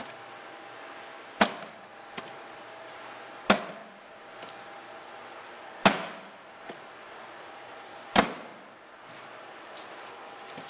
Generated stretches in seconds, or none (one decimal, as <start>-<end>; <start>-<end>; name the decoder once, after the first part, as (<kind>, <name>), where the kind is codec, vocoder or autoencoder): none

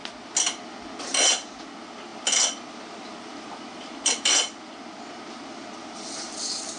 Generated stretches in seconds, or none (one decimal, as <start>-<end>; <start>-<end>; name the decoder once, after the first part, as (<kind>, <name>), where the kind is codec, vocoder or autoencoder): 1.0-6.8 (vocoder, BigVGAN v2)

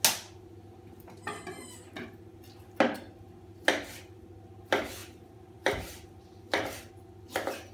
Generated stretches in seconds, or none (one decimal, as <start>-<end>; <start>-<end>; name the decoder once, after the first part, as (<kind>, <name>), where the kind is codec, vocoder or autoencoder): 5.0-6.9 (vocoder, BigVGAN v2)

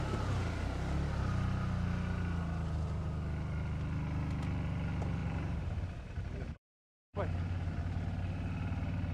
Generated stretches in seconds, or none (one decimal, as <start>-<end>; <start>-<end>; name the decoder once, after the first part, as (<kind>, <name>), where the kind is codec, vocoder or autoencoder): 5.2-7.8 (vocoder, BigVGAN v2)

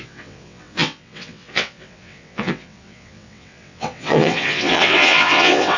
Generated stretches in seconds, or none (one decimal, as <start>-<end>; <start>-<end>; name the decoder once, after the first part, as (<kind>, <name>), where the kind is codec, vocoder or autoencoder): 0.0-5.8 (vocoder, WaveNeXt)

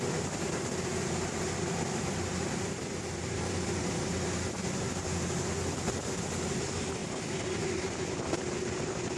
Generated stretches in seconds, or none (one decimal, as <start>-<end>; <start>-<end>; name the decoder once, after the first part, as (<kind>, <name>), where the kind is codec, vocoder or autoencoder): 0.9-5.0 (vocoder, BigVGAN v2); 7.0-7.8

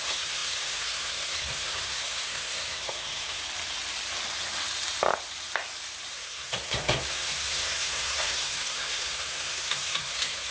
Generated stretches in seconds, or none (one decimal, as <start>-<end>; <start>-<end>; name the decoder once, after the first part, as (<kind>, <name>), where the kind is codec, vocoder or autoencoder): 0.0-3.4 (codec, SNAC); 6.1-10.5